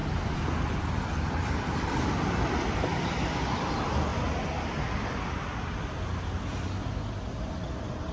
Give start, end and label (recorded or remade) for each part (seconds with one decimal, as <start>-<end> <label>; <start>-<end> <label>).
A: 0.0-0.6 recorded; 0.6-4.1 remade; 4.1-7.4 recorded; 7.4-8.1 remade